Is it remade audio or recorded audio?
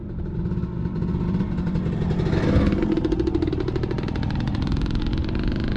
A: recorded